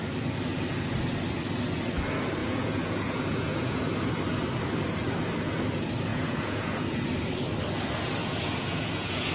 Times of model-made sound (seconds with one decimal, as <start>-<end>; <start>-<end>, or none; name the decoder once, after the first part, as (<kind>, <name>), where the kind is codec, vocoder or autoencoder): 2.4-3.8 (vocoder, Vocos); 6.1-7.1; 8.2-9.3